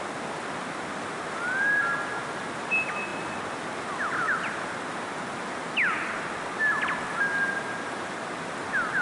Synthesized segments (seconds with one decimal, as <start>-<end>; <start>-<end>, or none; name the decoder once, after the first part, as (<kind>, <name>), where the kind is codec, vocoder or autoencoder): none